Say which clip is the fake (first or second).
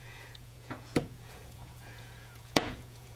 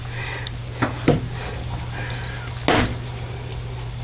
first